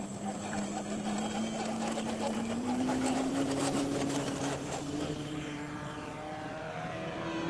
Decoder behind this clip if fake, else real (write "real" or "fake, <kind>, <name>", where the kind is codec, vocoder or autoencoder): fake, vocoder, BigVGAN v2